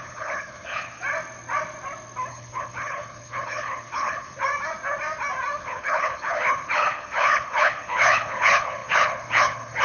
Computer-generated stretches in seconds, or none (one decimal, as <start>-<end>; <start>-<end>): 0.0-1.0; 2.3-4.4; 5.6-9.8